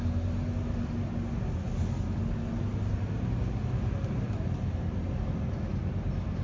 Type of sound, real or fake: real